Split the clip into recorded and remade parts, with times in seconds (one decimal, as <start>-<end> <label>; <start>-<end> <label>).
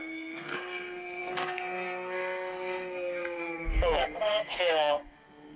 0.0-5.6 remade